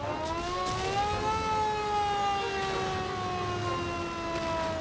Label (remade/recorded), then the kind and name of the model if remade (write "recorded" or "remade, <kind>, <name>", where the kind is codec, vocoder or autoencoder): recorded